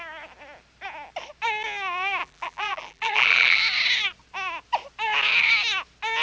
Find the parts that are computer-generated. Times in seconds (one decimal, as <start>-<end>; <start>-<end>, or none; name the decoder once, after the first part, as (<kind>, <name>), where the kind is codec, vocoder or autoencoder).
2.2-3.6 (vocoder, BigVGAN v2)